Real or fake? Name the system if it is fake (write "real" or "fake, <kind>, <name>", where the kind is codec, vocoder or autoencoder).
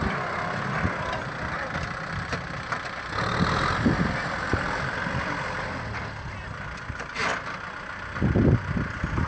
real